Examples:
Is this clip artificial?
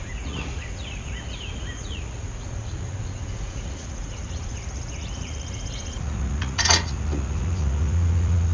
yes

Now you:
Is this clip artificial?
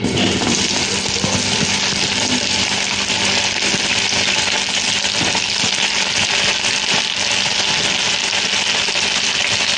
no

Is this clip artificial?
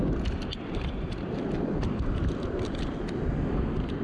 no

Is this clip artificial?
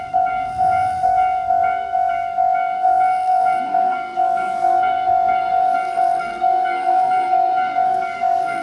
yes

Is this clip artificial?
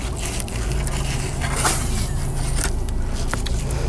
no